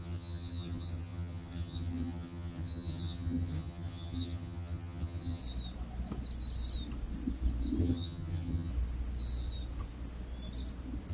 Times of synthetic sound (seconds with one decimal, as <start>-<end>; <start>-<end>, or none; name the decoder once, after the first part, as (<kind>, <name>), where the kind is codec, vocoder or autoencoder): 0.0-5.4 (vocoder, HiFi-GAN); 7.8-8.7